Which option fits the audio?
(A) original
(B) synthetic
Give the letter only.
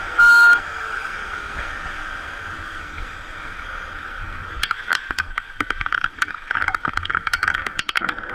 B